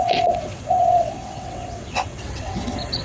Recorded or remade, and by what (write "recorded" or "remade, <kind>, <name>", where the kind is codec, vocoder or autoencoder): remade, vocoder, WaveNeXt